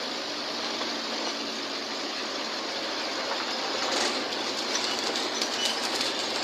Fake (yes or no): no